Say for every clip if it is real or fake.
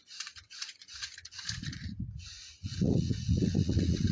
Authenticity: fake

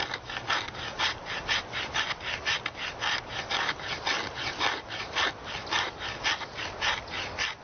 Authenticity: real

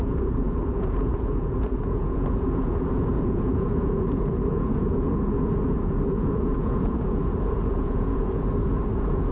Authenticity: fake